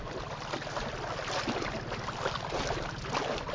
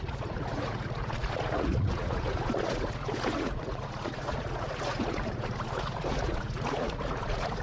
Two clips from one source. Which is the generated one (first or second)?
second